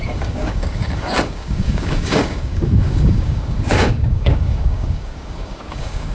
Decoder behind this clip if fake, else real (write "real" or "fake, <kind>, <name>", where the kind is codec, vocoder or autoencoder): fake, codec, DAC